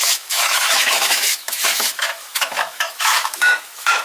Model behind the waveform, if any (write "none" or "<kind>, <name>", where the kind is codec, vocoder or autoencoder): autoencoder, DAC-VAE